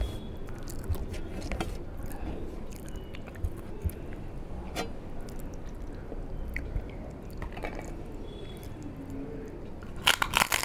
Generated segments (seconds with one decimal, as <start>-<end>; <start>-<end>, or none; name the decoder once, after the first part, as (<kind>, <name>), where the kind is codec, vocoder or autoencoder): none